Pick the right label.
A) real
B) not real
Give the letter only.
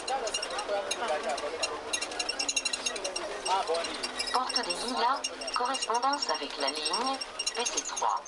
A